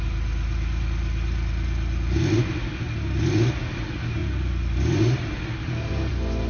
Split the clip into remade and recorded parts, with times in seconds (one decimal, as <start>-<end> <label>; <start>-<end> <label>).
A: 0.0-6.5 recorded